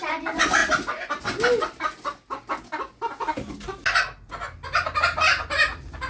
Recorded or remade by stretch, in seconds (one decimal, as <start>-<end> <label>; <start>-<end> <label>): 0.0-6.1 recorded